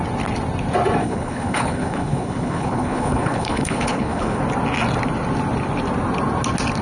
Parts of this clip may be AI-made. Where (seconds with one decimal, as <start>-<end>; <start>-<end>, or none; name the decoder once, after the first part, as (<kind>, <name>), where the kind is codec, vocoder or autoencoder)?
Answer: 1.0-4.4 (codec, HILCodec)